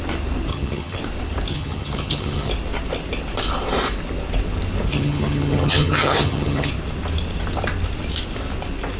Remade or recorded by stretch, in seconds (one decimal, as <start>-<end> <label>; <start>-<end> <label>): 0.0-0.5 recorded; 0.5-1.0 remade; 1.0-1.5 recorded; 1.5-2.5 remade; 2.5-4.9 recorded; 4.9-6.7 remade; 6.7-9.0 recorded

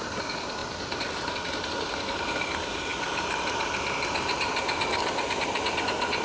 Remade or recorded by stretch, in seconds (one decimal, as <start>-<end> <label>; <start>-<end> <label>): 0.0-6.2 recorded

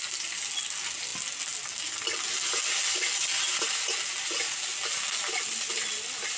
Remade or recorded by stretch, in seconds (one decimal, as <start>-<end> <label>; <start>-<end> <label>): 0.0-6.4 recorded

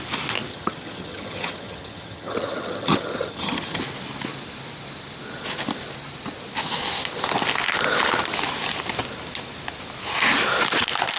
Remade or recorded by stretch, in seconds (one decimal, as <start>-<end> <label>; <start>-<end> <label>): 0.0-0.5 recorded; 0.5-3.8 remade; 3.8-11.2 recorded

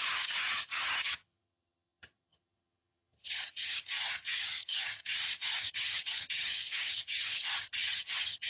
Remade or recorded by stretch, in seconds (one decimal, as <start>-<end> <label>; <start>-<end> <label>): 0.0-8.5 remade

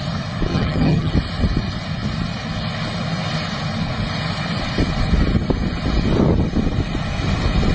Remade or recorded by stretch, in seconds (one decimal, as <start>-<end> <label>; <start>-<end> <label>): 0.0-0.5 recorded; 0.5-1.1 remade; 1.1-7.7 recorded